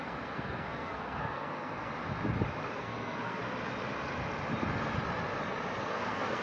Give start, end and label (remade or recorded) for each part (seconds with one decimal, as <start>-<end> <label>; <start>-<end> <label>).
0.0-1.9 remade; 1.9-2.8 recorded; 2.8-3.4 remade; 3.4-5.8 recorded; 5.8-6.4 remade